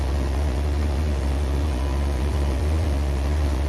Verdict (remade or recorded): remade